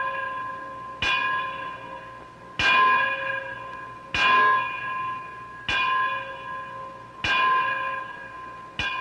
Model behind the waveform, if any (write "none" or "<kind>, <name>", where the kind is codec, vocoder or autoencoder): none